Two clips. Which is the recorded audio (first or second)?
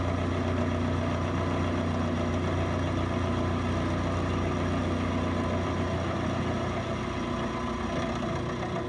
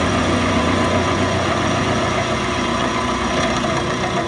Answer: first